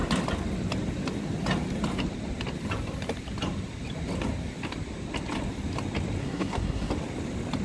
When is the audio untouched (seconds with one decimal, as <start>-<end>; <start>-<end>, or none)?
0.0-6.2; 6.9-7.6